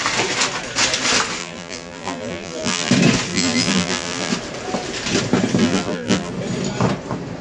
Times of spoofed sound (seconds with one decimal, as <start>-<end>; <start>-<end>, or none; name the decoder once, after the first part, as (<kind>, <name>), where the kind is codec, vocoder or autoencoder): 1.4-2.9 (vocoder, BigVGAN v2); 3.3-4.3; 5.6-6.3